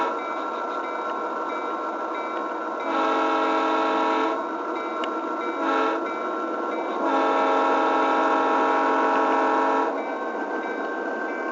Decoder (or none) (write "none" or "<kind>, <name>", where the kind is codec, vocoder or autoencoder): none